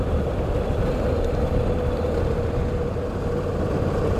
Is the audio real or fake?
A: real